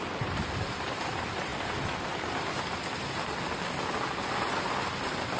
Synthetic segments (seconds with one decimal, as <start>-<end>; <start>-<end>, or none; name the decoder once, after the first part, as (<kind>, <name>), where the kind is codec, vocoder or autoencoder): 0.0-1.5 (vocoder, BigVGAN v2); 4.4-5.4